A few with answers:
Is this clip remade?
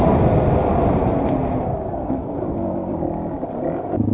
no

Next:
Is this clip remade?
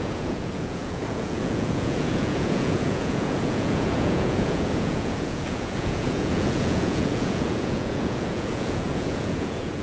yes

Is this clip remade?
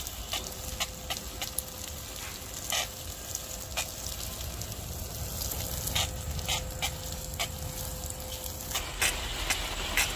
no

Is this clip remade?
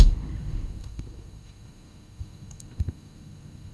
yes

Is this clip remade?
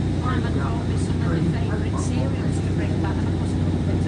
yes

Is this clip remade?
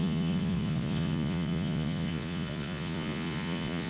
yes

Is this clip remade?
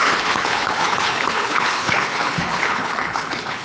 yes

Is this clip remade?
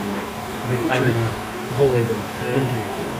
yes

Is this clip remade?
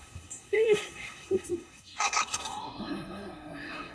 yes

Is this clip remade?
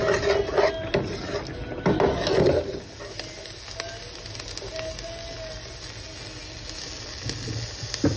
no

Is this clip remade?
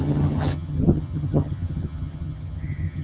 yes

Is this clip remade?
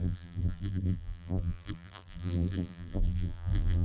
yes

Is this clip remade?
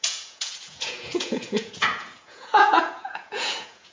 yes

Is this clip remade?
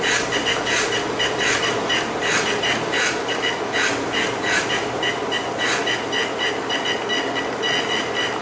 no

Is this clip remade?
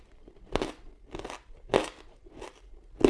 no